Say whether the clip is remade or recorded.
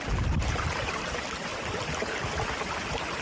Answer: recorded